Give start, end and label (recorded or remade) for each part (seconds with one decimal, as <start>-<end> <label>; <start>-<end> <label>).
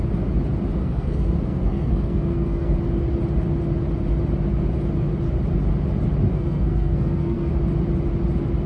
0.0-0.8 recorded; 0.8-2.8 remade; 2.8-6.3 recorded; 6.3-7.5 remade; 7.5-8.7 recorded